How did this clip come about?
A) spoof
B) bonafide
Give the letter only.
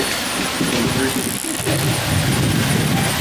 B